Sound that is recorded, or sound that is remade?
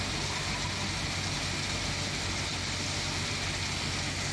recorded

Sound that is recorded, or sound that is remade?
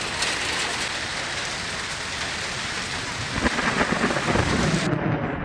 recorded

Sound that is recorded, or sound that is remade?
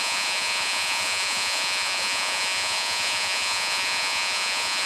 remade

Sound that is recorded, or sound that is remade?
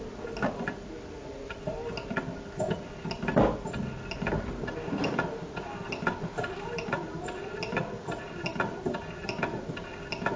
recorded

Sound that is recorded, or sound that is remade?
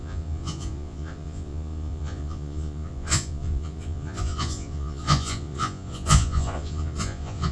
remade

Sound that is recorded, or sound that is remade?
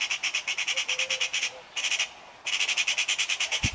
recorded